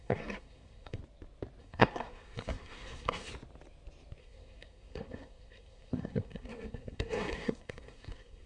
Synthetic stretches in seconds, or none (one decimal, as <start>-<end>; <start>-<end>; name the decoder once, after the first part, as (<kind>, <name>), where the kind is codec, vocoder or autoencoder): 0.0-1.0 (codec, SNAC); 1.6-3.3; 4.2-8.5

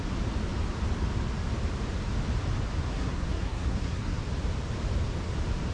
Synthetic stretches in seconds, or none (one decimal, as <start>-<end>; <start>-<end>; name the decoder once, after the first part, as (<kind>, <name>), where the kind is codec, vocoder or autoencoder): 2.9-4.2 (codec, SNAC)

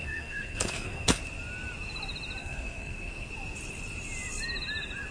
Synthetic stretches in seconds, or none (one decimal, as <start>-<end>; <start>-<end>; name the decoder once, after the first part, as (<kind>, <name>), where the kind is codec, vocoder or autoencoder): 0.0-1.2 (codec, SNAC); 2.4-3.3

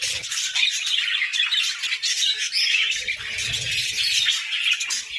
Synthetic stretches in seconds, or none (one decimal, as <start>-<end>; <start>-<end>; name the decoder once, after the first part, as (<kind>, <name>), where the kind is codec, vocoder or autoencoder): none